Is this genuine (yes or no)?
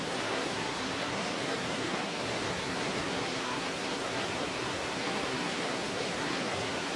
no